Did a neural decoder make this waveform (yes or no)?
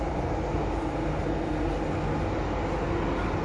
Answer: no